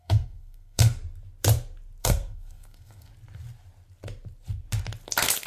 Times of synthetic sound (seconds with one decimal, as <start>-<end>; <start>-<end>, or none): 0.0-1.0; 2.0-3.1